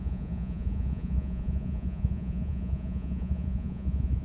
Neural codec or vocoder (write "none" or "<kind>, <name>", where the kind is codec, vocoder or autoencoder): vocoder, Vocos